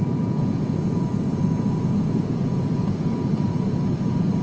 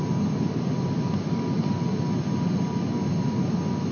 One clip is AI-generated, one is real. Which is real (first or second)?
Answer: second